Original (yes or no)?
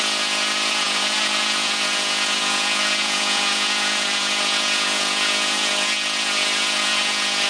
no